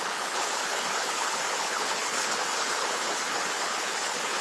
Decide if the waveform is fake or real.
fake